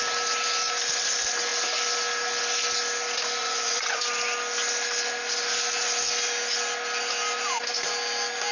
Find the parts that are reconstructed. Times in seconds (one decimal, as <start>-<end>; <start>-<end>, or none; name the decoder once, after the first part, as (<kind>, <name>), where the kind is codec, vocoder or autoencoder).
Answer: 3.4-4.0 (vocoder, Vocos)